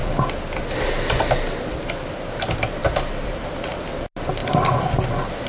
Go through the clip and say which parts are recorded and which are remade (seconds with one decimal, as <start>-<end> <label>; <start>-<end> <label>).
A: 0.0-5.5 recorded